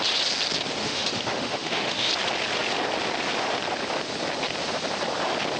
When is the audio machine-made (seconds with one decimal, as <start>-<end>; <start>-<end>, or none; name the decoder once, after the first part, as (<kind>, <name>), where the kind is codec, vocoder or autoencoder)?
0.8-2.1 (autoencoder, DAC-VAE)